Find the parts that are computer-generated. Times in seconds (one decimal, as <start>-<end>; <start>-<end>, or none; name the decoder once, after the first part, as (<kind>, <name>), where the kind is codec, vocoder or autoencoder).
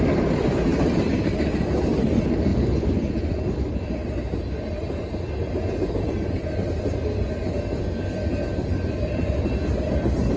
none